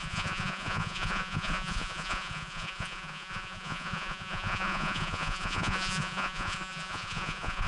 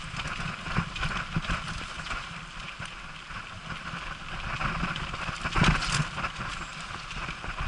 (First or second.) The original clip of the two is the second